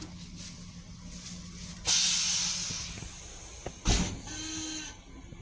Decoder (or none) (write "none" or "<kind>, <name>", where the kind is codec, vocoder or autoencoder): none